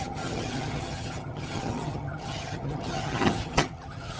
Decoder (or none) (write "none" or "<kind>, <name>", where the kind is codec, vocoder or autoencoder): vocoder, HiFi-GAN